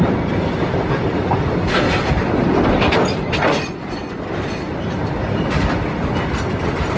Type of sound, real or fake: real